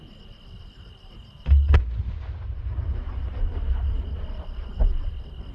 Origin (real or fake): real